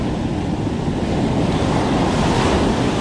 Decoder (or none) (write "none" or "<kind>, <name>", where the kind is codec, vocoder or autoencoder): none